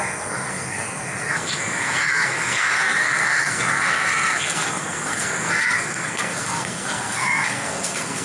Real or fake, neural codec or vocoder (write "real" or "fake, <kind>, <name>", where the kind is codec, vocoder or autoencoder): fake, codec, SNAC